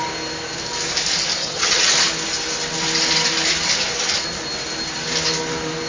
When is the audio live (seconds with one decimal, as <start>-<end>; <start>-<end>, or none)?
0.0-1.4; 1.9-5.9